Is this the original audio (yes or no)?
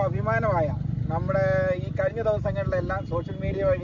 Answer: yes